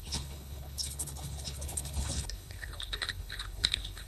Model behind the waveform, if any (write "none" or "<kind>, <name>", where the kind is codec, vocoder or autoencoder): codec, HILCodec